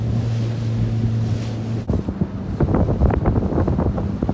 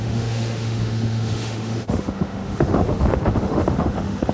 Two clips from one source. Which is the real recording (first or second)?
first